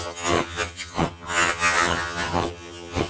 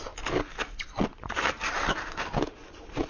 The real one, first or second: second